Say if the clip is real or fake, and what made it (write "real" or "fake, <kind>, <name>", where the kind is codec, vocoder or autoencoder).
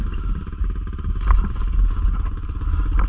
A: real